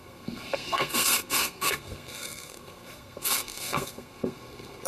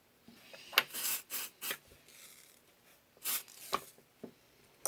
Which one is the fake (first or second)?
first